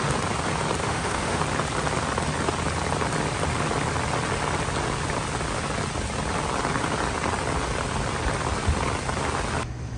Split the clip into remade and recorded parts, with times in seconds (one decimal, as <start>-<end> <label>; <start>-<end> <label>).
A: 0.0-0.8 recorded; 0.8-1.4 remade; 1.4-10.0 recorded